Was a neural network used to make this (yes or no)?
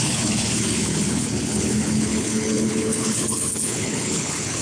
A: yes